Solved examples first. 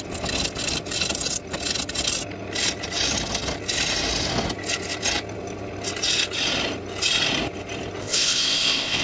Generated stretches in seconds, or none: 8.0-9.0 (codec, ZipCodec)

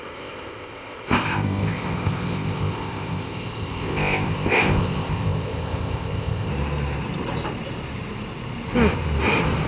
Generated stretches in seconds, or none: 0.0-6.5 (codec, ZipCodec)

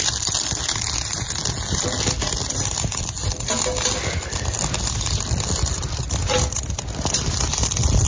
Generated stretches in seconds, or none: none

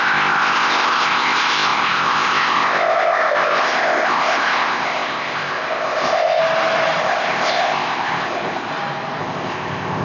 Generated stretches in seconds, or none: 0.0-6.4 (codec, ZipCodec); 7.0-8.7; 9.2-10.0

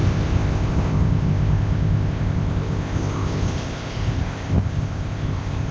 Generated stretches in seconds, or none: 0.0-5.7 (codec, ZipCodec)

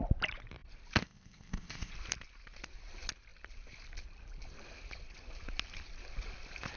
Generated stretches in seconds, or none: 1.0-1.9 (codec, ZipCodec)

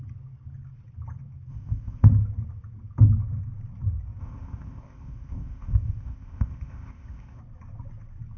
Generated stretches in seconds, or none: 1.5-2.1 (codec, ZipCodec); 4.2-7.4